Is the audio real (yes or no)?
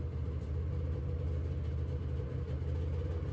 yes